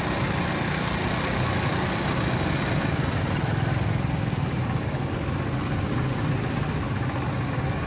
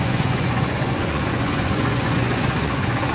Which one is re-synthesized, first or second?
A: second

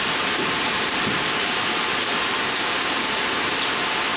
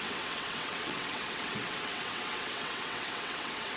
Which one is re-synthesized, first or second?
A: second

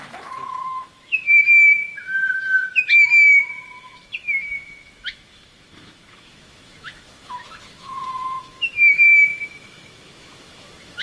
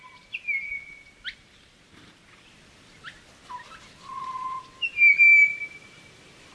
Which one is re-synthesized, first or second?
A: first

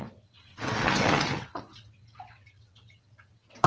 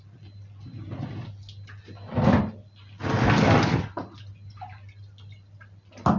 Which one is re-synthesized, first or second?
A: first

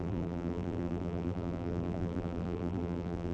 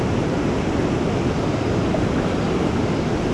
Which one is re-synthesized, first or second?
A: first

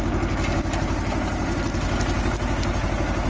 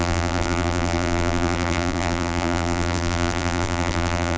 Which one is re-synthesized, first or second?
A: second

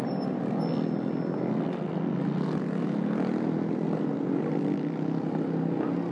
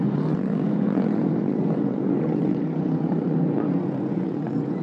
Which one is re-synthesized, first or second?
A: second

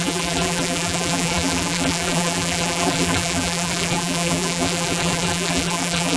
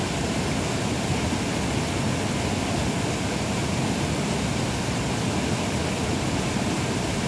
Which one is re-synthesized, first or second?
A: first